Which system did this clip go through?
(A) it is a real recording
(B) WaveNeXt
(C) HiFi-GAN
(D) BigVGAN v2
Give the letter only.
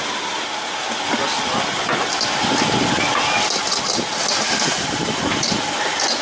A